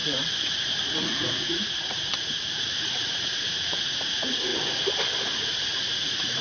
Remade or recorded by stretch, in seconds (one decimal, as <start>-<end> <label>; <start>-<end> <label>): 0.0-4.5 remade; 4.5-5.2 recorded; 5.2-6.4 remade